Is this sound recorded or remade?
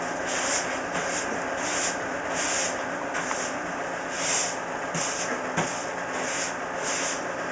recorded